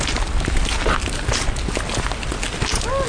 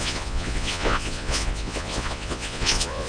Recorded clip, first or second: first